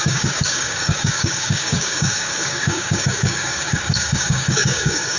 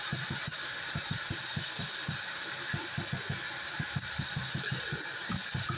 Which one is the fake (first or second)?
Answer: first